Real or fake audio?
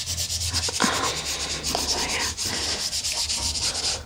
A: real